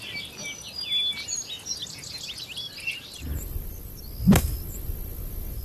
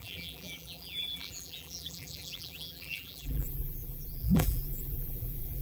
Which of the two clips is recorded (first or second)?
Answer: first